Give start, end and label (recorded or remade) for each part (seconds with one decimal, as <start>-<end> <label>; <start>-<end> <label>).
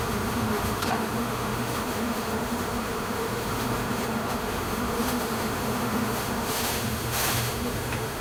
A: 0.0-8.2 remade